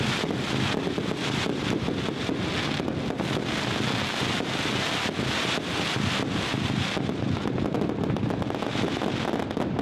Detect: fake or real real